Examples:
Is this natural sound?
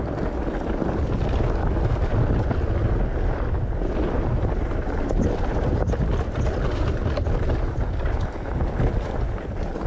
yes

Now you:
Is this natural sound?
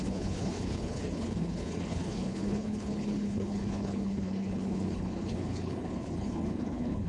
no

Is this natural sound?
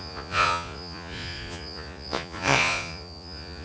no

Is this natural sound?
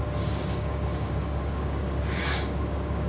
no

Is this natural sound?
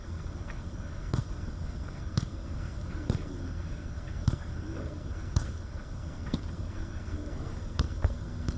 no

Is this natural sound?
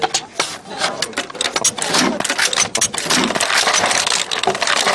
yes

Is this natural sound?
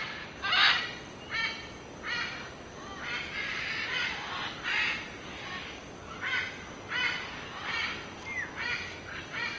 yes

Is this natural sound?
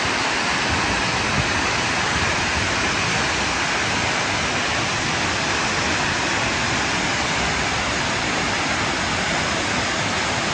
yes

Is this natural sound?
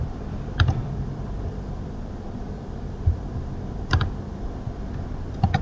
no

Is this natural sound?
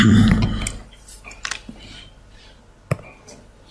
yes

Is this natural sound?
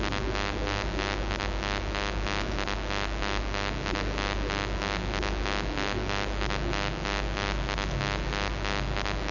yes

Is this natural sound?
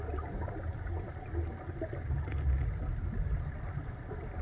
yes